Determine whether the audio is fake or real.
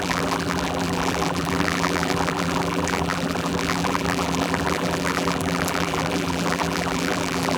fake